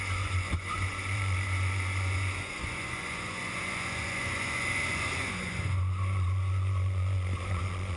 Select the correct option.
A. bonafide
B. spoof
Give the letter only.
B